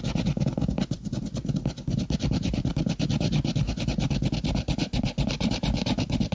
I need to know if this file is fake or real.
real